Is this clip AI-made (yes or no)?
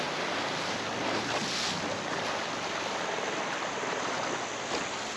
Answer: no